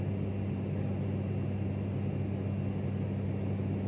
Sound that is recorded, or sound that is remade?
recorded